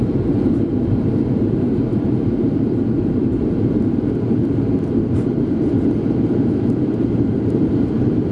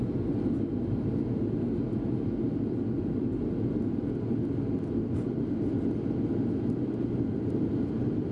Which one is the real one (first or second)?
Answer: second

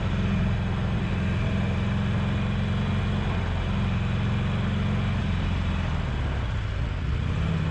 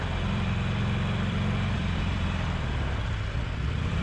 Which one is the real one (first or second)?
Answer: first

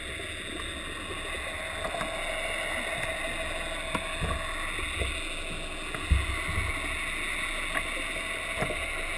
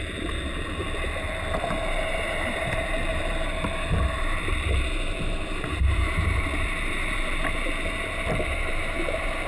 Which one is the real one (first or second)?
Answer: first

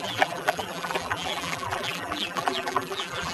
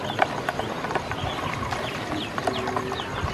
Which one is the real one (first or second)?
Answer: second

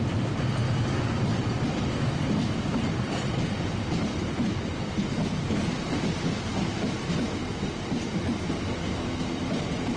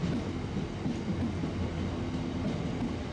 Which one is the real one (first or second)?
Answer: second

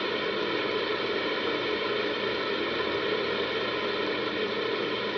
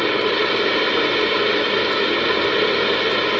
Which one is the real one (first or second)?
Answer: second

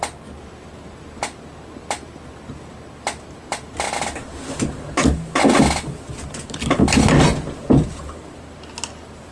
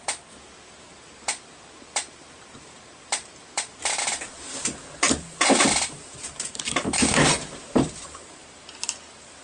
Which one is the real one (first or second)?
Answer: first